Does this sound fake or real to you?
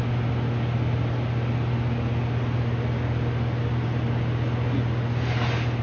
real